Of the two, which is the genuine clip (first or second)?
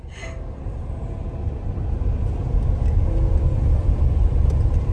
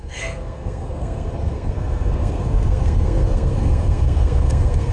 first